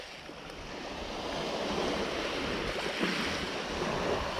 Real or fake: real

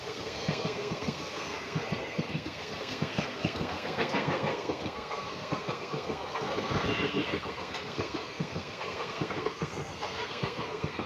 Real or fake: fake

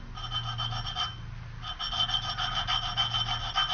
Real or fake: real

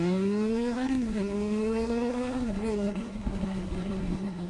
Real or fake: fake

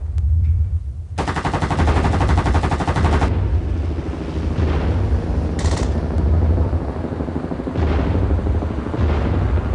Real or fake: real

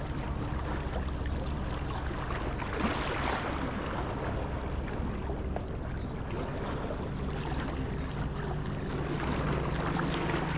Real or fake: real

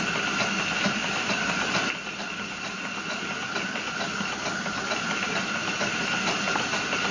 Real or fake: real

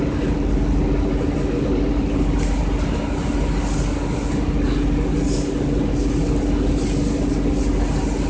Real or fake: real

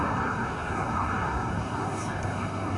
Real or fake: fake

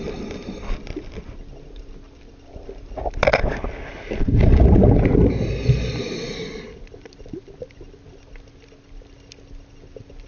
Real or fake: real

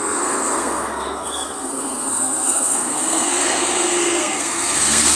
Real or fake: fake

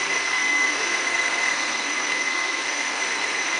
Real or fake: fake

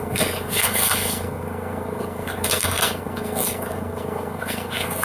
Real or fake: fake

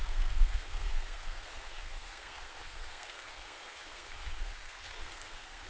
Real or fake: fake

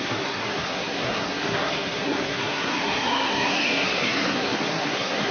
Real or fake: fake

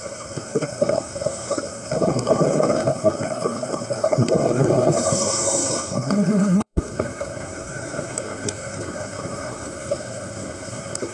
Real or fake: fake